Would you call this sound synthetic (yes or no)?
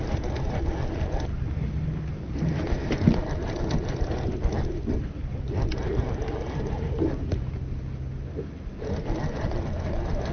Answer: no